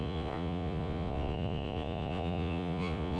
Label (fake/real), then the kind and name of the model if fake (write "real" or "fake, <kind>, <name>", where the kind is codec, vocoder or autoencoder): fake, vocoder, Vocos